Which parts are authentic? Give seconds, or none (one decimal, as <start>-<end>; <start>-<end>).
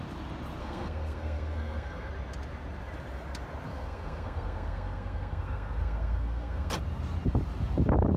0.0-0.6; 2.1-3.7; 6.7-8.2